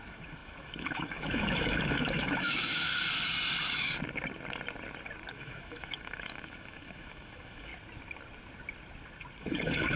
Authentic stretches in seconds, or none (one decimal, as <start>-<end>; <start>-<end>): 2.9-5.3; 7.7-9.4